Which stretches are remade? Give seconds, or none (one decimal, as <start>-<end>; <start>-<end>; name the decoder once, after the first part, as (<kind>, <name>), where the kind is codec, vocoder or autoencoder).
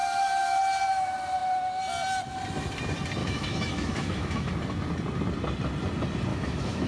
0.0-0.6 (autoencoder, DAC-VAE); 3.2-4.5; 6.3-6.9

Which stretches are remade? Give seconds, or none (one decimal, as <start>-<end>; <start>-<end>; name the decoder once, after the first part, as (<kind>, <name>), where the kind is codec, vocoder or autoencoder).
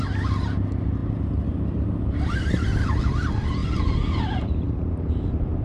0.0-3.6 (vocoder, BigVGAN v2); 4.4-5.6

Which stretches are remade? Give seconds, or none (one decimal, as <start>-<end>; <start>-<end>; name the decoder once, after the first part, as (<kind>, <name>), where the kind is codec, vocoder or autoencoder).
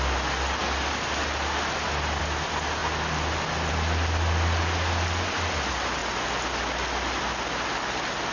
none